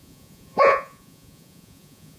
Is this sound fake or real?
fake